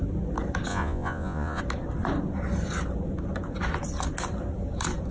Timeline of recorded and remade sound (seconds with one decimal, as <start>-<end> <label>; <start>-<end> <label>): 0.0-0.7 recorded; 0.7-1.6 remade; 1.6-5.1 recorded